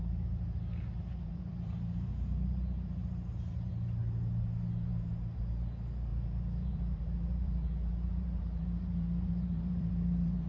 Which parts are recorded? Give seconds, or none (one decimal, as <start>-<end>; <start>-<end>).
0.0-1.0; 2.1-3.0; 3.7-6.1